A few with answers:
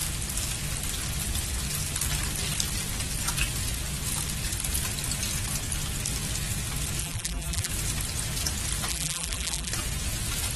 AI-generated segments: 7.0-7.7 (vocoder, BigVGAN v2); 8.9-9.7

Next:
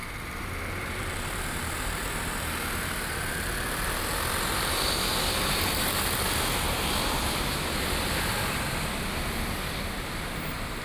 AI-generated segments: 0.0-3.3 (vocoder, BigVGAN v2); 4.5-8.1

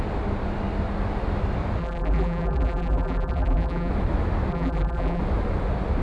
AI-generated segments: 1.8-3.9 (vocoder, BigVGAN v2); 4.5-5.2

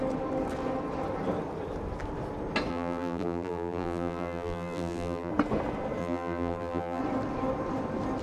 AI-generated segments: 2.7-5.3 (vocoder, BigVGAN v2); 6.0-7.0

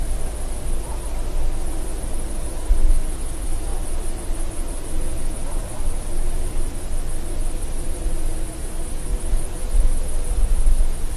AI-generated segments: none

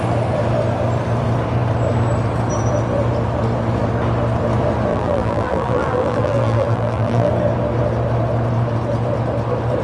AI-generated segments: 4.9-7.3 (vocoder, BigVGAN v2)

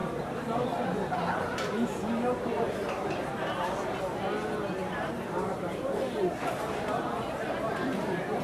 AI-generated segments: 0.0-4.0 (vocoder, BigVGAN v2); 4.8-8.4

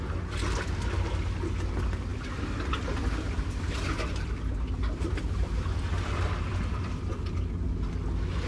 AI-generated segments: 2.1-7.1 (vocoder, BigVGAN v2)